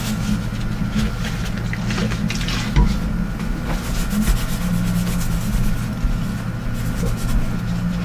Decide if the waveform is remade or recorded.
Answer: recorded